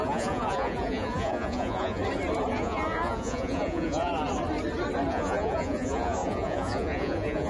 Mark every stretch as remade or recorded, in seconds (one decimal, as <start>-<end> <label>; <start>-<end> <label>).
0.0-2.0 remade; 2.0-2.5 recorded; 2.5-4.1 remade; 4.1-5.1 recorded; 5.1-7.5 remade

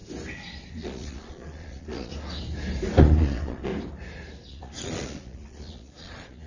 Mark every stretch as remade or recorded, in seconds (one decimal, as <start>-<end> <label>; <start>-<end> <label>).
0.0-0.7 recorded; 0.7-2.1 remade; 2.1-3.0 recorded; 3.0-3.7 remade; 3.7-4.5 recorded; 4.5-6.5 remade

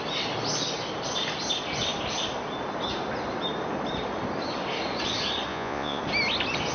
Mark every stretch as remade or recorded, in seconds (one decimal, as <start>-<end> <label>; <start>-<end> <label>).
0.0-5.5 recorded; 5.5-6.0 remade; 6.0-6.7 recorded

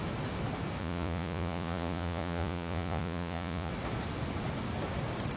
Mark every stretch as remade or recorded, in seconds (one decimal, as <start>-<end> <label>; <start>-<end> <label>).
0.0-0.8 recorded; 0.8-3.7 remade; 3.7-5.4 recorded

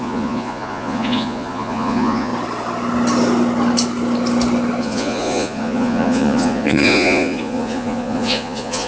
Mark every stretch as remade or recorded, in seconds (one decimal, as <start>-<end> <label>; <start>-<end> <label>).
0.0-2.3 remade; 2.3-4.8 recorded; 4.8-8.9 remade